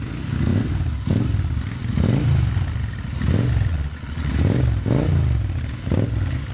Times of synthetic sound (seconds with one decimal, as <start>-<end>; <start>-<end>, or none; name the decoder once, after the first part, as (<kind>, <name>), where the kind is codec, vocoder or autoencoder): 3.7-4.3 (vocoder, Vocos)